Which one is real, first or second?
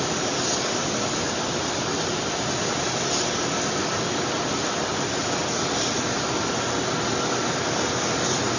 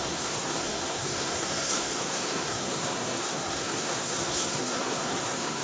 first